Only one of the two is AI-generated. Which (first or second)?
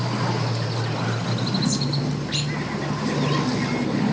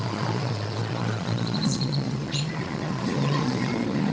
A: second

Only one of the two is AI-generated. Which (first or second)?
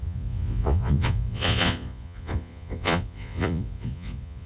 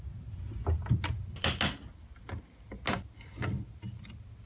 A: first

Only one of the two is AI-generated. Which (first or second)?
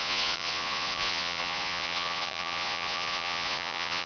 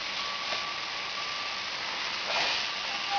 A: first